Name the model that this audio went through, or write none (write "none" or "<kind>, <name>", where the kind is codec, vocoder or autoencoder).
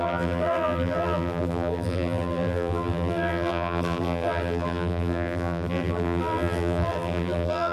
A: vocoder, BigVGAN v2